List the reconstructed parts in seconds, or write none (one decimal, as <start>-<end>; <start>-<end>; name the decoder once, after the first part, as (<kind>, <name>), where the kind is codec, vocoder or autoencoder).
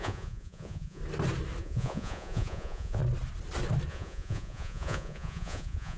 0.0-1.0 (vocoder, Vocos); 1.6-3.0; 3.9-6.0